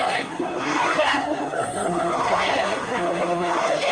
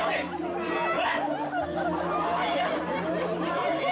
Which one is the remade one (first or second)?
first